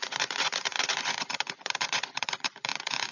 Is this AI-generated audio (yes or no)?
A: yes